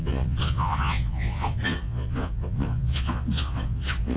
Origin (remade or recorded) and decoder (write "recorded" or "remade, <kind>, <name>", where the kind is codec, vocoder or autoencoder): remade, vocoder, Vocos